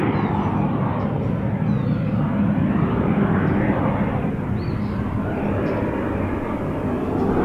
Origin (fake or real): real